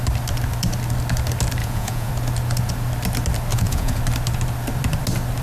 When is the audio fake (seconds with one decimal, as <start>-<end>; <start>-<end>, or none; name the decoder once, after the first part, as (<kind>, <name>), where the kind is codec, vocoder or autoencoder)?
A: 1.6-2.1 (vocoder, Vocos); 3.5-4.0